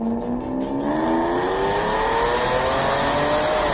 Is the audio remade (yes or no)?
no